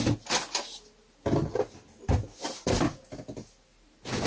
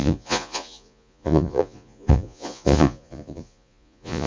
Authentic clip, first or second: first